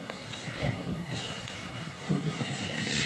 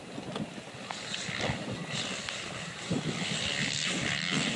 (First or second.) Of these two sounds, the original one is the second